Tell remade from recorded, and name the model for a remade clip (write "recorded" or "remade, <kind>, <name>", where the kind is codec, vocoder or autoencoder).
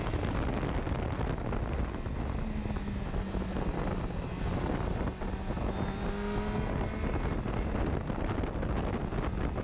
recorded